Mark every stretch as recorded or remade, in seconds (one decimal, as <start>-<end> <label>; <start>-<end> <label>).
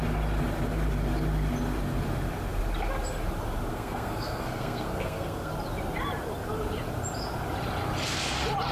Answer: 0.0-3.7 recorded; 3.7-5.5 remade; 5.5-8.7 recorded